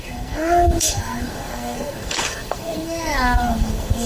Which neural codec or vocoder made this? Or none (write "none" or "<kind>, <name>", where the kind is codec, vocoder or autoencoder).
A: codec, SNAC